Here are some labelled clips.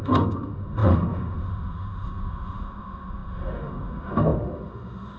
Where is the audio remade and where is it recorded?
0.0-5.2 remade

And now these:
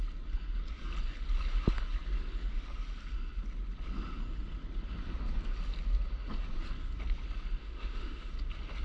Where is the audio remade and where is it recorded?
0.0-7.6 recorded; 7.6-8.3 remade; 8.3-8.8 recorded